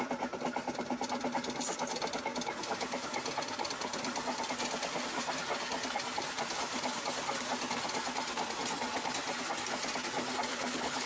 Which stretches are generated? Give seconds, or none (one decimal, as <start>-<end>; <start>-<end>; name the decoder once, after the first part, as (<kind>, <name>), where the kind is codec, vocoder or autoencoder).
10.5-11.1 (codec, HILCodec)